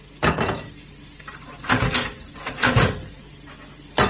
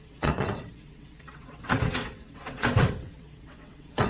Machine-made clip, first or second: second